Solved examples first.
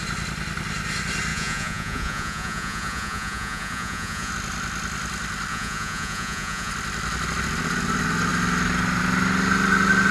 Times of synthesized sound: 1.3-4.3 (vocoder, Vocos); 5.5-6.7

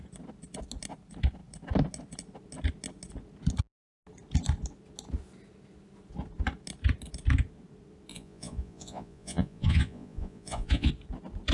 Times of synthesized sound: 8.1-10.9 (vocoder, Vocos)

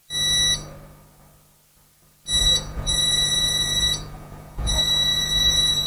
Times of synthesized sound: 2.4-5.9 (vocoder, Vocos)

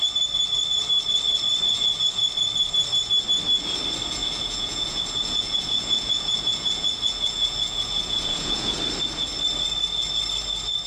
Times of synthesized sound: 4.2-8.8 (vocoder, Vocos)

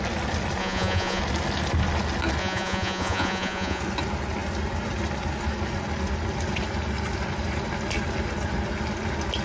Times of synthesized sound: 0.6-1.2 (vocoder, Vocos); 2.4-3.8